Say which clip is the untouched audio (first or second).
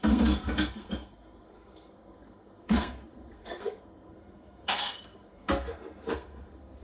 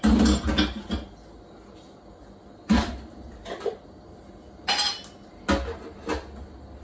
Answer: second